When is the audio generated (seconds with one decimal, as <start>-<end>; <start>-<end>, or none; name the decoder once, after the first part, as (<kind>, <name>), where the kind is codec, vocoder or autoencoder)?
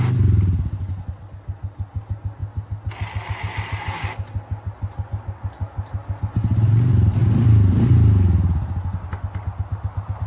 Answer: none